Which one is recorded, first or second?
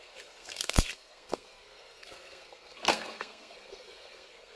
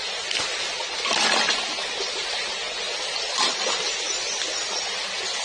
second